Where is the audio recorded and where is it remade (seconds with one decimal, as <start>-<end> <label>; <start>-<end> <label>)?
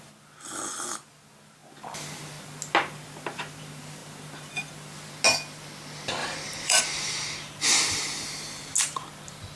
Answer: 0.0-6.2 recorded; 6.2-6.8 remade; 6.8-9.6 recorded